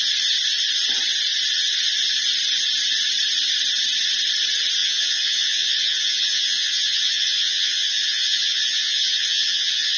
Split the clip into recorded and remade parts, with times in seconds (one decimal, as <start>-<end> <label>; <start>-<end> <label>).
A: 0.0-4.8 recorded; 4.8-10.0 remade